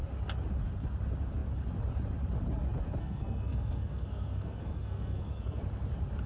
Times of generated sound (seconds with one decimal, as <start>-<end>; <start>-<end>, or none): 3.0-5.6